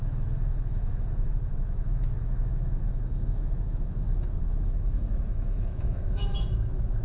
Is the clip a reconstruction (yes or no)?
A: yes